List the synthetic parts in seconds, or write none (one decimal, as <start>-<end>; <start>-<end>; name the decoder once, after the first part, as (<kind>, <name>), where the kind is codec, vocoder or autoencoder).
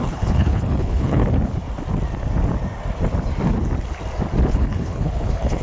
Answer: 0.0-1.2 (codec, HILCodec); 4.5-5.6